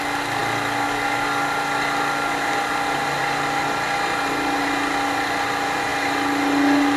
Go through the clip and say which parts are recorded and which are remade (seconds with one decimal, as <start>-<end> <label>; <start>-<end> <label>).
0.0-7.0 recorded

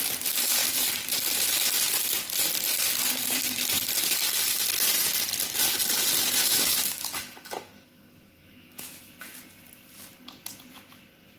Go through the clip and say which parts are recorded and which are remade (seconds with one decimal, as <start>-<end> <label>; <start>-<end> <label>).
0.0-6.4 recorded; 6.4-9.1 remade; 9.1-11.4 recorded

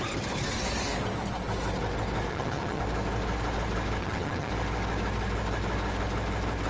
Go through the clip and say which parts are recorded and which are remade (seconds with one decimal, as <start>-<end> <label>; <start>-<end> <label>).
0.0-2.3 recorded; 2.3-2.8 remade; 2.8-4.0 recorded; 4.0-4.5 remade; 4.5-6.7 recorded

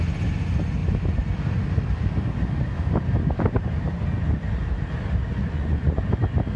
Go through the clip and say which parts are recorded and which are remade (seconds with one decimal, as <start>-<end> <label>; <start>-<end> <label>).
0.0-5.4 recorded; 5.4-6.1 remade; 6.1-6.6 recorded